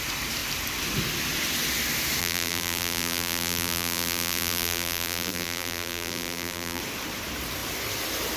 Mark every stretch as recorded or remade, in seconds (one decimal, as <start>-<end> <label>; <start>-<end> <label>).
0.0-2.2 recorded; 2.2-6.8 remade; 6.8-8.4 recorded